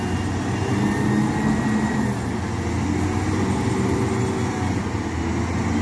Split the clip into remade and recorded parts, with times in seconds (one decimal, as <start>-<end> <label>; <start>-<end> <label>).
0.0-5.8 recorded